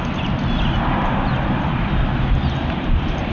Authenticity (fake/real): real